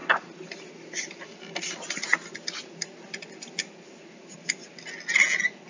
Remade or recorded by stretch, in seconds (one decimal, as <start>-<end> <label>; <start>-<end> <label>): 0.0-5.7 recorded